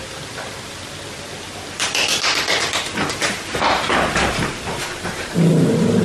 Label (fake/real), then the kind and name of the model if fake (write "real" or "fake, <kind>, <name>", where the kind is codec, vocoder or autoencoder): real